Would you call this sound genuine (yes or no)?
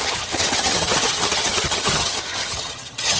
no